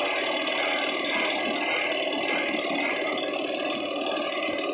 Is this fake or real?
real